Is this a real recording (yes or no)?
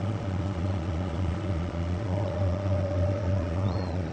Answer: no